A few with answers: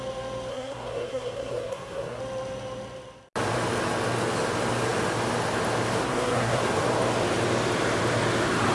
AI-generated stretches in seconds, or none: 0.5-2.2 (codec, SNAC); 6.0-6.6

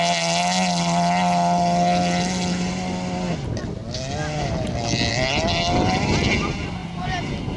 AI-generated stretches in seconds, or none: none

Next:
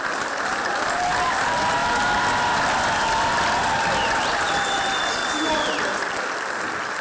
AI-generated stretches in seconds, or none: none